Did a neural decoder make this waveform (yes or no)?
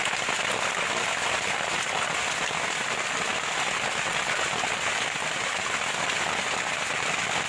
no